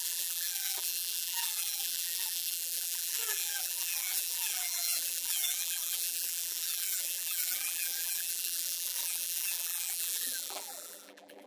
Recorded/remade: remade